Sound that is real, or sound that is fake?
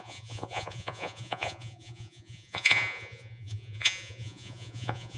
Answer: fake